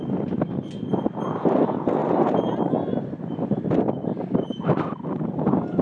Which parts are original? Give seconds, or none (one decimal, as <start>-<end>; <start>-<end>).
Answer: 0.0-2.0; 2.6-4.0

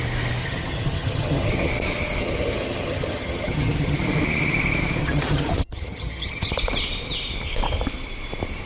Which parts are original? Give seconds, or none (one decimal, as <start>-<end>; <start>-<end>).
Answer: 0.0-0.4; 1.7-2.2; 4.0-5.0; 6.5-8.7

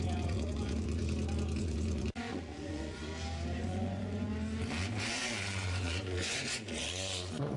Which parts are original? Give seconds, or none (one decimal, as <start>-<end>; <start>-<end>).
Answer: 1.0-1.6; 3.1-3.6; 4.3-4.9

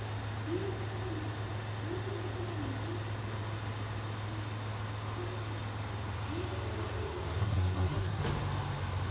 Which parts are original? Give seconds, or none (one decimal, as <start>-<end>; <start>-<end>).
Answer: 0.0-7.4; 8.2-9.1

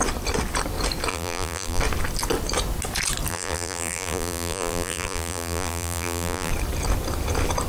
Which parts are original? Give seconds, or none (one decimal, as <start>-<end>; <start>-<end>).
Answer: 0.0-1.1; 1.8-3.3; 6.5-7.7

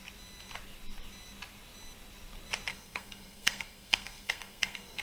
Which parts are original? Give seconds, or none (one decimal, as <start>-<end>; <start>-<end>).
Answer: 0.0-2.7